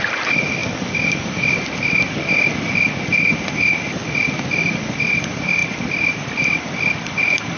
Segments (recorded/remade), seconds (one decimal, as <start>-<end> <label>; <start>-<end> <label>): 0.0-7.6 recorded